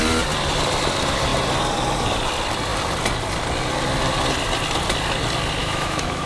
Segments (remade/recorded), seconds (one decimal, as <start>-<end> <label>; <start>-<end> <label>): 0.0-5.6 recorded; 5.6-6.3 remade